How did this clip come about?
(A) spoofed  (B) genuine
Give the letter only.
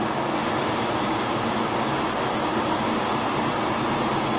B